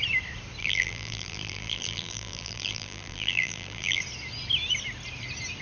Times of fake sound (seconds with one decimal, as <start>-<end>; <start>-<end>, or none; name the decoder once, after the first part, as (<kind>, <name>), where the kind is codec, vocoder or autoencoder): 0.6-4.0 (vocoder, BigVGAN v2)